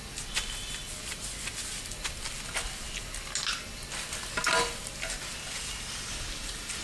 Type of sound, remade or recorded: recorded